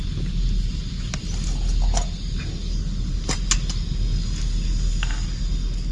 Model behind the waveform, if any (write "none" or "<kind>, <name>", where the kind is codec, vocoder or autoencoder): none